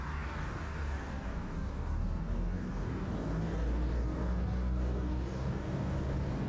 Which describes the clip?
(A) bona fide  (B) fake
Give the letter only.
B